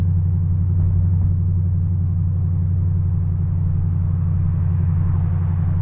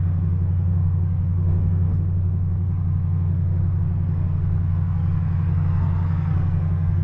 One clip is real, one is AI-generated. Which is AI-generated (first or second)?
second